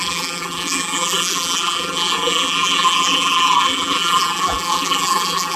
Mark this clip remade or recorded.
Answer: remade